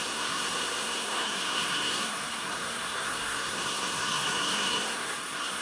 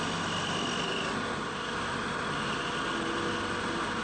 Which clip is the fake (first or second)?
first